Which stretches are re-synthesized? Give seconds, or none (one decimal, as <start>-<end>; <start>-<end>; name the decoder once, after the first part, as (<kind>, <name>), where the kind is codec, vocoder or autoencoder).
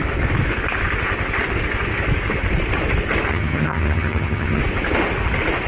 3.3-4.6 (vocoder, HiFi-GAN)